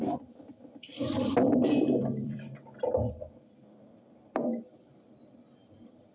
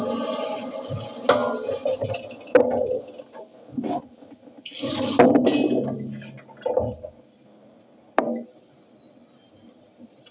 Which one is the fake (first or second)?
first